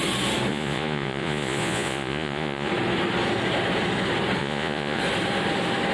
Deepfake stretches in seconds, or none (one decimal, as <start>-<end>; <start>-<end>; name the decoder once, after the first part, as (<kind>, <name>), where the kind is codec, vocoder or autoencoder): 0.5-2.7 (vocoder, Vocos); 4.4-5.0